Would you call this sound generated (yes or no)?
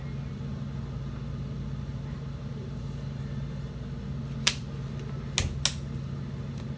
no